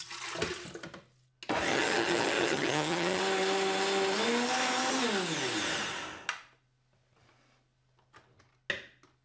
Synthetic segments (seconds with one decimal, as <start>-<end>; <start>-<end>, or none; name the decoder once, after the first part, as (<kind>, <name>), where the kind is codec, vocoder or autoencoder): 1.7-3.2 (vocoder, HiFi-GAN)